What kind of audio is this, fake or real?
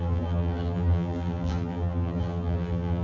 fake